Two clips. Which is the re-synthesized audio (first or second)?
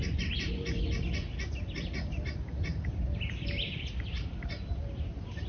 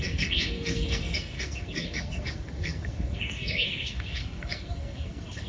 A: second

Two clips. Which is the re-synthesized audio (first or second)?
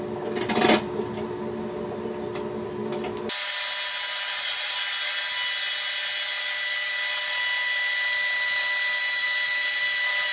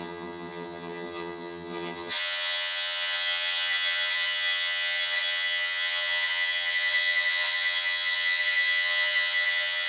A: second